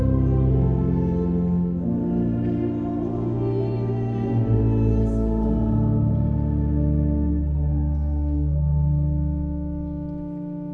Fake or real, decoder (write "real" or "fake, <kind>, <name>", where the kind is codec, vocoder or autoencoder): real